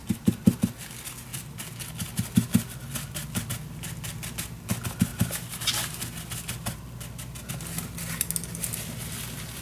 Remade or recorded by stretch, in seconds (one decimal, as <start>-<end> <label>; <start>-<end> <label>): 0.0-0.6 remade; 0.6-5.1 recorded; 5.1-5.9 remade; 5.9-9.6 recorded